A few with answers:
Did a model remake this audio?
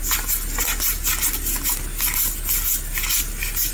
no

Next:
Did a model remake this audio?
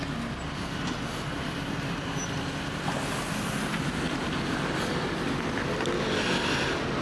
no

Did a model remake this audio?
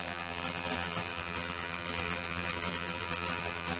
yes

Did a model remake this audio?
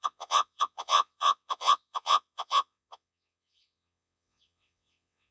yes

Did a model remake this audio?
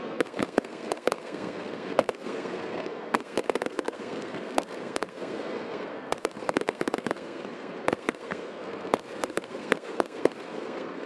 yes